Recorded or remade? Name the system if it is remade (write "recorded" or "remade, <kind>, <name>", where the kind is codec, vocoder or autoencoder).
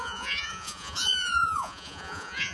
remade, vocoder, Vocos